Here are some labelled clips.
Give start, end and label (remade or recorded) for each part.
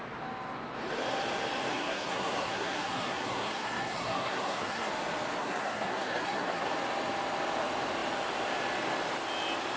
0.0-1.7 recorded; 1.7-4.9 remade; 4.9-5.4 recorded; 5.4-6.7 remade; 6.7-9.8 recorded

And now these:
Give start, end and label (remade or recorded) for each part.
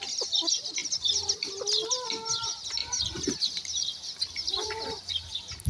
0.0-2.8 recorded; 2.8-5.1 remade; 5.1-5.7 recorded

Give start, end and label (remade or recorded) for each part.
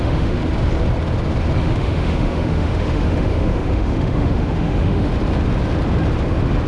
0.0-0.4 remade; 0.4-1.6 recorded; 1.6-5.1 remade; 5.1-6.7 recorded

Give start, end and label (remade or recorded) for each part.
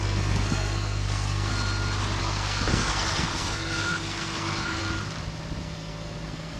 0.0-1.5 remade; 1.5-2.2 recorded; 2.2-4.8 remade; 4.8-5.6 recorded; 5.6-6.6 remade